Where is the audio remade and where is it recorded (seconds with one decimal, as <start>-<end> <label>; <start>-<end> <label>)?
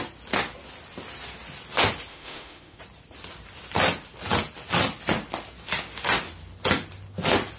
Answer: 0.0-2.1 recorded; 2.1-2.8 remade; 2.8-7.6 recorded